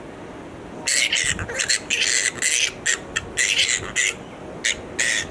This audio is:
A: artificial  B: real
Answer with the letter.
B